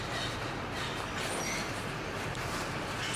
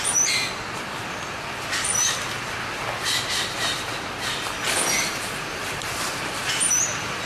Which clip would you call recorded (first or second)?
first